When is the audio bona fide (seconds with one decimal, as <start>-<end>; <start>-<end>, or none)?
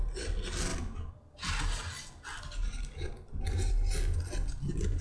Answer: 0.0-5.0